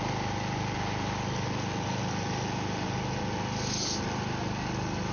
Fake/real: real